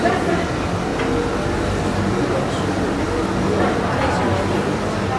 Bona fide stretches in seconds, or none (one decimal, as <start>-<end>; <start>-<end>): 0.0-5.2